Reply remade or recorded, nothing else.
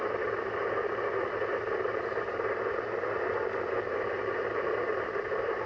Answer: recorded